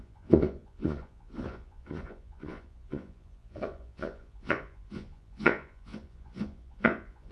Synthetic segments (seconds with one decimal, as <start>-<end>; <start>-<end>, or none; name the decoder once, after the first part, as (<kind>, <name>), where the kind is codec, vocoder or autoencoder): 0.0-7.3 (vocoder, Vocos)